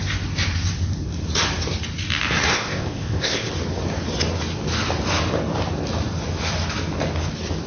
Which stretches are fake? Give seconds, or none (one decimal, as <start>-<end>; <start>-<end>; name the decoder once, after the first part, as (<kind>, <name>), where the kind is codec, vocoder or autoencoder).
2.5-3.5 (codec, ZipCodec)